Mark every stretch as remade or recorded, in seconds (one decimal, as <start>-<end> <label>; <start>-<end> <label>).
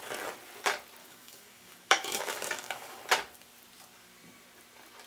0.0-1.0 recorded; 1.0-3.0 remade; 3.0-5.1 recorded